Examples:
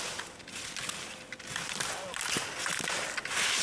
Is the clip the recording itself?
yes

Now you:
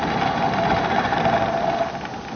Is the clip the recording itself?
yes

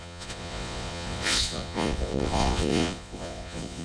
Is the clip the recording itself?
no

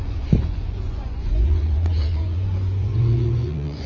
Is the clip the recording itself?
no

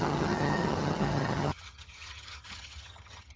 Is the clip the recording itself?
no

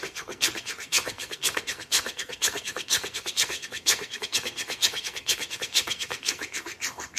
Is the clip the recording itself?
no